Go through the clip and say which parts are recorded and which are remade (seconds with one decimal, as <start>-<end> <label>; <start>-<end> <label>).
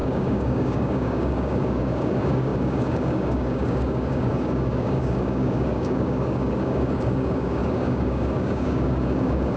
0.0-9.6 remade